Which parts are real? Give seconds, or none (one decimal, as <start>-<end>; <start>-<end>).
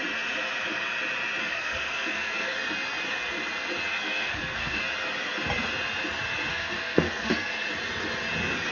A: 0.0-1.4; 2.5-3.9; 4.8-6.5; 7.5-8.7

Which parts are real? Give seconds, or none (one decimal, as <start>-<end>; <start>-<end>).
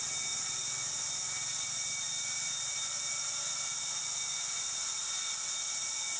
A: 0.0-6.2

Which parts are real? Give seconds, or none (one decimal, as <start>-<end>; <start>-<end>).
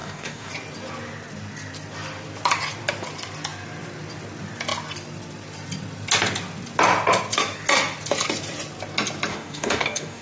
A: 0.5-9.3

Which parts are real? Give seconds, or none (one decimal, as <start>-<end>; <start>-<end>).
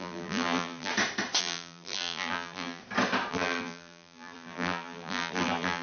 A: 0.9-1.4; 2.8-3.3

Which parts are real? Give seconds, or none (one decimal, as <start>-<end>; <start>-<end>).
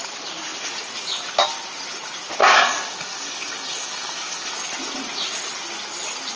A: 0.0-2.4; 4.5-6.4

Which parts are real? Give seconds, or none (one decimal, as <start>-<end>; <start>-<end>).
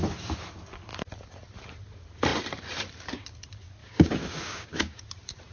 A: 0.0-3.8; 5.0-5.5